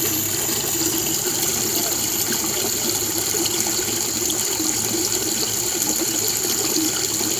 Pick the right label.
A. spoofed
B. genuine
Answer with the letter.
B